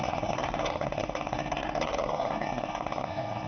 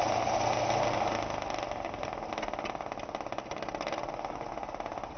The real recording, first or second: second